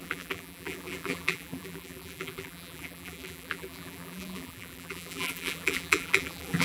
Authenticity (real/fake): fake